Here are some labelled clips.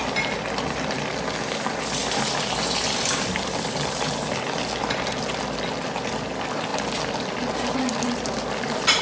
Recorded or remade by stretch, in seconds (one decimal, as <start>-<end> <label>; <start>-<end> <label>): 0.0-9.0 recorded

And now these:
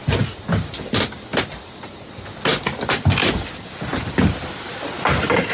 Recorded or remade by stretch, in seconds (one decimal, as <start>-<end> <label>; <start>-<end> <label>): 0.0-5.5 recorded

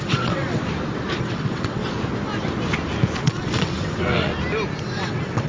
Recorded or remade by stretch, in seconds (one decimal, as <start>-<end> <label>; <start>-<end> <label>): 0.0-0.6 remade; 0.6-1.2 recorded; 1.2-1.8 remade; 1.8-3.2 recorded; 3.2-4.3 remade; 4.3-4.8 recorded; 4.8-5.5 remade

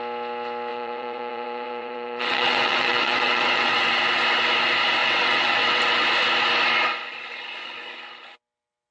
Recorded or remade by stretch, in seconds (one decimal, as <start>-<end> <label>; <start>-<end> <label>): 0.0-0.7 recorded; 0.7-3.9 remade; 3.9-5.0 recorded; 5.0-5.8 remade; 5.8-8.9 recorded

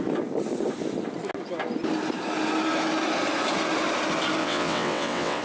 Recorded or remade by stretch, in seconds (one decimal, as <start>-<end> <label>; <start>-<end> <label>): 0.0-4.4 recorded; 4.4-5.4 remade

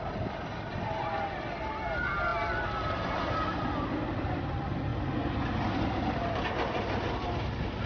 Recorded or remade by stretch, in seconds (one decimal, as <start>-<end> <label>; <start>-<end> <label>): 0.0-7.9 recorded